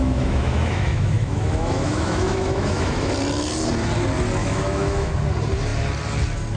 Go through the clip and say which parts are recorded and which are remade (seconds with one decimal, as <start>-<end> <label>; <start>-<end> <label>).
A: 0.0-3.1 remade; 3.1-4.4 recorded; 4.4-5.1 remade; 5.1-6.6 recorded